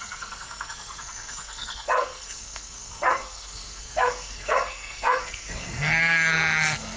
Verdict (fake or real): fake